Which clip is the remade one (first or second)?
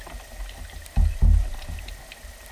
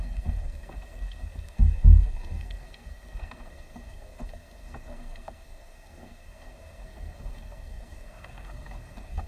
second